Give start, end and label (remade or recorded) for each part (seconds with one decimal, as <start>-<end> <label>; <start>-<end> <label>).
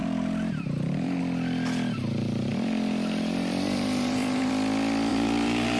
0.0-1.2 remade; 1.2-2.5 recorded; 2.5-4.5 remade; 4.5-5.1 recorded; 5.1-5.8 remade